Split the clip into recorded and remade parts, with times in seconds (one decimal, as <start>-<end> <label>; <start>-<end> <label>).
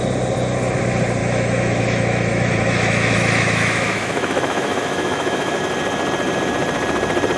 0.0-1.2 recorded; 1.2-5.6 remade; 5.6-7.4 recorded